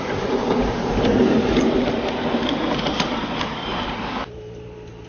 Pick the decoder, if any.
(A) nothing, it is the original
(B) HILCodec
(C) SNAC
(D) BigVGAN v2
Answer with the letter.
D